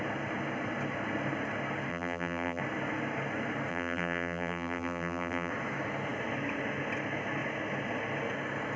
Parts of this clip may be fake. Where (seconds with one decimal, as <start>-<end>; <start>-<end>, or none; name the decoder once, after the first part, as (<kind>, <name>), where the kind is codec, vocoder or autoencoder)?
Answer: 1.9-2.6 (vocoder, BigVGAN v2); 3.7-5.5